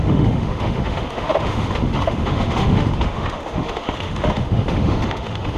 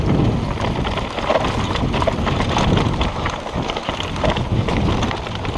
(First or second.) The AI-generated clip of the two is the first